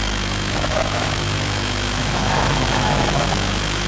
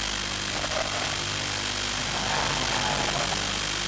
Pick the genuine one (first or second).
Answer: second